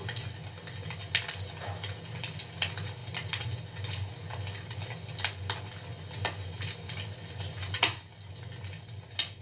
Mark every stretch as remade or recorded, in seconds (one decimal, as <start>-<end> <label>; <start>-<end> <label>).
0.0-9.4 recorded